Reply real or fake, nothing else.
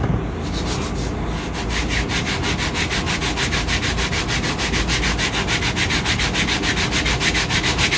real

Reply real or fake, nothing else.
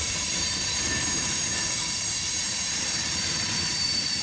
fake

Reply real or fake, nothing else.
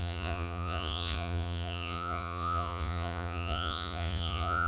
fake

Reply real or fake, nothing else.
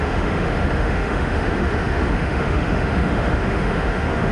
fake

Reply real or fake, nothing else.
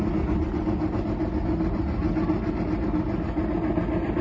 real